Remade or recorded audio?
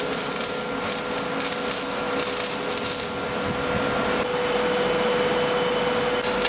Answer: recorded